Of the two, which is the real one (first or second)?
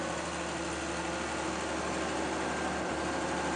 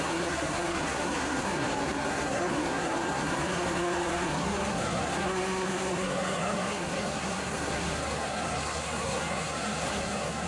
first